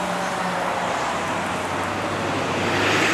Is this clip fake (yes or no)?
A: no